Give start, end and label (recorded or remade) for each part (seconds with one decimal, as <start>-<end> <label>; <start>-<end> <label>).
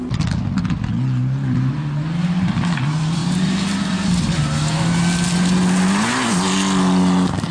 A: 0.0-7.5 recorded